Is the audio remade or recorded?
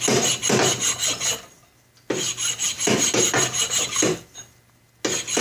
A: recorded